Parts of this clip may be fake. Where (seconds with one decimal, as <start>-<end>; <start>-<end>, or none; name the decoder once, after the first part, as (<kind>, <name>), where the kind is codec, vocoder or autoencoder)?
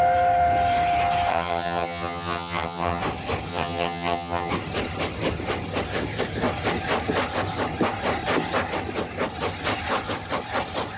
1.3-3.0 (vocoder, HiFi-GAN); 3.5-4.5